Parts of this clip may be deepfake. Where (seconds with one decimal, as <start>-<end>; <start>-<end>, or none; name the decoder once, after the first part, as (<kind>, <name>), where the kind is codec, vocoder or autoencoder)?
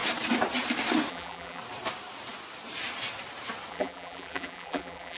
1.1-1.6 (vocoder, BigVGAN v2); 3.7-5.2